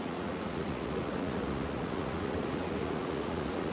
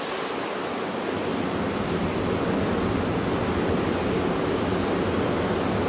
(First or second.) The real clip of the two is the second